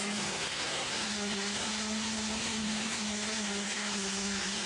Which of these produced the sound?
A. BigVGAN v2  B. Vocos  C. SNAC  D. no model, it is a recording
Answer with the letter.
C